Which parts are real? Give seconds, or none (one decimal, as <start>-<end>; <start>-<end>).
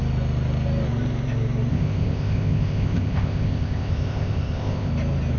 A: 0.0-1.7; 4.9-5.4